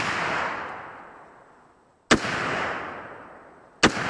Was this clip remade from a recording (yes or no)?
no